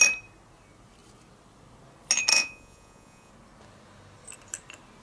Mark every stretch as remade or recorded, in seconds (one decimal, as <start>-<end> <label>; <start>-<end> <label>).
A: 0.0-2.3 recorded; 2.3-3.3 remade; 3.3-5.0 recorded